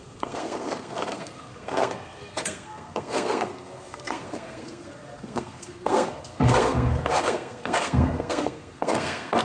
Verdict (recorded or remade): remade